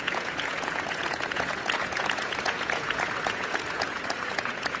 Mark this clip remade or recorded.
remade